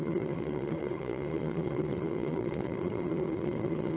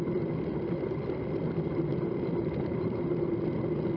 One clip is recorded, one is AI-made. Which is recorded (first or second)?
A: second